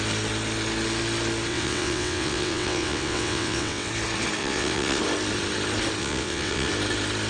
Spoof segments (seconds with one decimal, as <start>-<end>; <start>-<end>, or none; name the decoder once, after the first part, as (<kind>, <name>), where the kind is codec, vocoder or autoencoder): 1.5-3.9 (vocoder, WaveNeXt); 4.4-5.0; 6.0-6.7